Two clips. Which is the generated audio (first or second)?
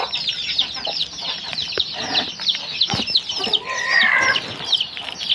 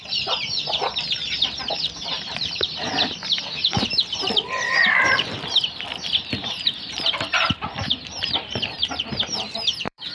second